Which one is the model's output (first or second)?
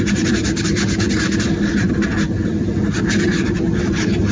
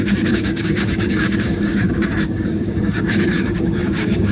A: second